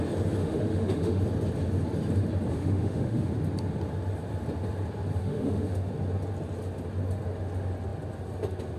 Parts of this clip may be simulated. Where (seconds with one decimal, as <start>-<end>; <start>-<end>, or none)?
0.4-1.2; 2.5-3.3; 5.2-5.9